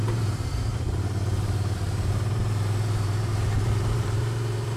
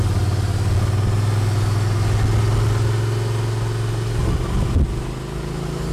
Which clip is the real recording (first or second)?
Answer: second